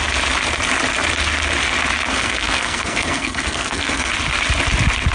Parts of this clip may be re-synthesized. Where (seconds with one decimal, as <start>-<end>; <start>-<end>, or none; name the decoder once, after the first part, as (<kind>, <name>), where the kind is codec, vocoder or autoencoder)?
2.1-4.1 (codec, SNAC)